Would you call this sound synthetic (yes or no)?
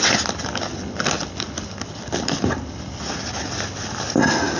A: no